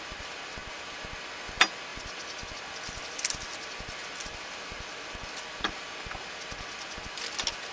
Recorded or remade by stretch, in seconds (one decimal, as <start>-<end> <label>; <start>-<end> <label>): 0.0-7.7 recorded